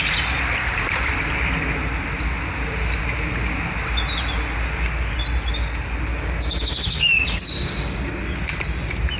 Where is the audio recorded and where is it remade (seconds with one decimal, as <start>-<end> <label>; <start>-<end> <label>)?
0.0-0.6 recorded; 0.6-1.1 remade; 1.1-6.1 recorded; 6.1-8.2 remade; 8.2-9.2 recorded